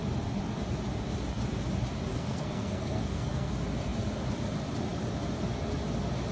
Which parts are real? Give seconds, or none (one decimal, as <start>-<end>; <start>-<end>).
0.0-2.1; 3.5-6.3